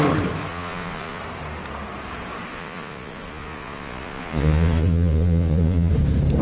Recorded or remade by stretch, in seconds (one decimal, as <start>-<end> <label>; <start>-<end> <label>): 0.0-0.5 recorded; 0.5-1.2 remade; 1.2-2.5 recorded; 2.5-5.9 remade; 5.9-6.4 recorded